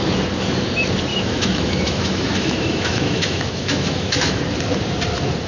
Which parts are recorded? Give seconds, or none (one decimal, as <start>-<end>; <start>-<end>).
0.0-1.1; 4.4-5.5

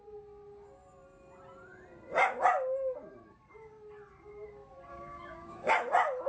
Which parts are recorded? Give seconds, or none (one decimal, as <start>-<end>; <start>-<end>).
0.0-4.9; 5.7-6.3